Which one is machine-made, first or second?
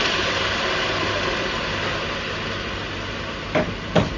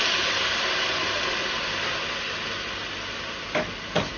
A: first